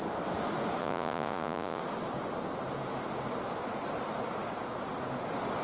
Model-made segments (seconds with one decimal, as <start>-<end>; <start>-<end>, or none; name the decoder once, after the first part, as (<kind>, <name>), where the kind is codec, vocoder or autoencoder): 0.8-1.8 (vocoder, Vocos)